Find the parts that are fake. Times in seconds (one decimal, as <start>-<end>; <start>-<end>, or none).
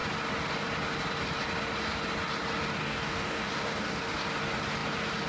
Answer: 2.8-4.0